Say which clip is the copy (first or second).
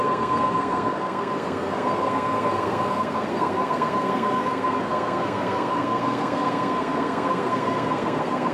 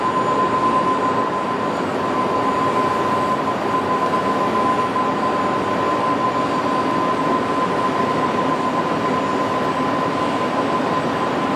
first